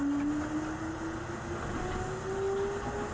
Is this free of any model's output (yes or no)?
yes